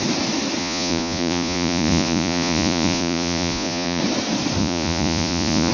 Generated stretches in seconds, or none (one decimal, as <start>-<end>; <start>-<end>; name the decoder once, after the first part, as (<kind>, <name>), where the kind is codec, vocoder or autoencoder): 0.6-4.0 (vocoder, Vocos); 4.6-5.7